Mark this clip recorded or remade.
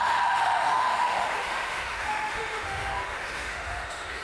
remade